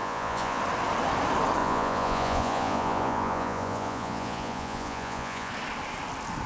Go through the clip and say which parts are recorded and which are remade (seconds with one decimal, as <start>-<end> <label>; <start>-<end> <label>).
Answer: 0.0-0.6 remade; 0.6-1.6 recorded; 1.6-5.5 remade; 5.5-6.5 recorded